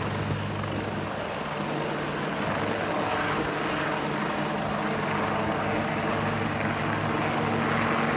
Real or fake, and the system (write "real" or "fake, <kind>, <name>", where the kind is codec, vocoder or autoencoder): real